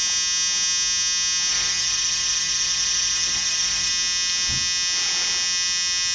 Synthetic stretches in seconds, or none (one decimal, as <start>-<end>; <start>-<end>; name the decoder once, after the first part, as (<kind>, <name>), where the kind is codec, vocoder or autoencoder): 1.5-3.9 (vocoder, Vocos)